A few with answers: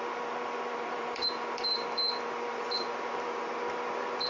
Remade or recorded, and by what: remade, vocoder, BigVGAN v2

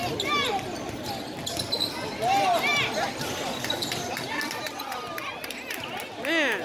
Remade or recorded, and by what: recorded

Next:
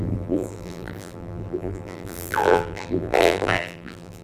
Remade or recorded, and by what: remade, vocoder, BigVGAN v2